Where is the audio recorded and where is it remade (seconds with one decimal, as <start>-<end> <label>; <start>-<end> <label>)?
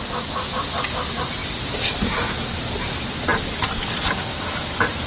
0.0-5.1 recorded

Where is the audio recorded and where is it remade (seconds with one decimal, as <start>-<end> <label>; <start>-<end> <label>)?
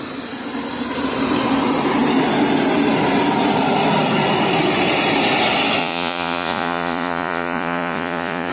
0.0-5.8 recorded; 5.8-8.5 remade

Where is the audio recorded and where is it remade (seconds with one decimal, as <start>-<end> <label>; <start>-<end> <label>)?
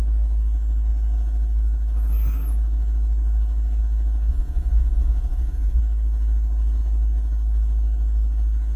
0.0-4.3 recorded; 4.3-5.8 remade; 5.8-8.8 recorded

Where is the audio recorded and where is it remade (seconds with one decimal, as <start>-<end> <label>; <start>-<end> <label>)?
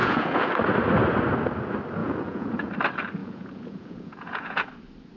0.0-0.5 remade; 0.5-2.0 recorded; 2.0-2.7 remade; 2.7-3.2 recorded; 3.2-4.7 remade; 4.7-5.2 recorded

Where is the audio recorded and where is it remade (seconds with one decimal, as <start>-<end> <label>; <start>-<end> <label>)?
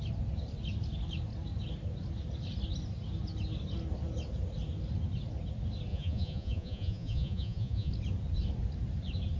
0.0-5.9 recorded; 5.9-7.9 remade; 7.9-9.4 recorded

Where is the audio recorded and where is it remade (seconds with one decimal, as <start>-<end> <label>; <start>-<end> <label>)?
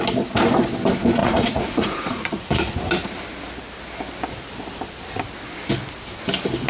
0.0-1.2 recorded; 1.2-2.7 remade; 2.7-6.7 recorded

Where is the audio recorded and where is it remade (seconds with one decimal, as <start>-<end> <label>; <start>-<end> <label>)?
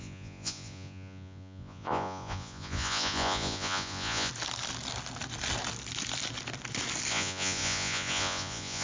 0.0-4.3 remade; 4.3-7.1 recorded; 7.1-8.8 remade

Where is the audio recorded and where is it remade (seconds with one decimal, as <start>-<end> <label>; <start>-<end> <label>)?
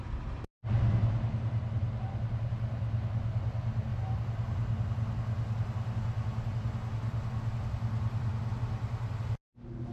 0.0-9.9 recorded